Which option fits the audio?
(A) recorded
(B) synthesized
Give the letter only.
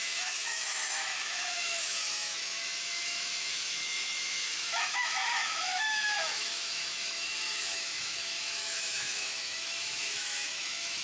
B